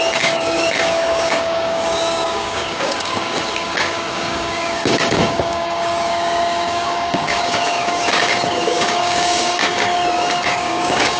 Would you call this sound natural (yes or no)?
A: no